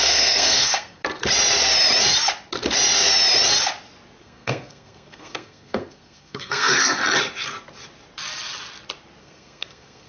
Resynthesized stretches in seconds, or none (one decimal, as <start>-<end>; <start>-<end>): 0.0-1.0; 4.2-7.0; 9.2-10.1